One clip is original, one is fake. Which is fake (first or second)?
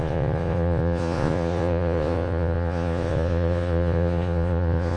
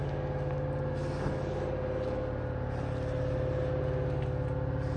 first